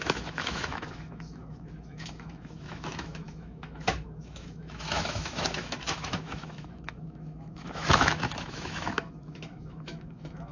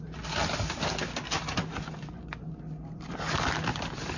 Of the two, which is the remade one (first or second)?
first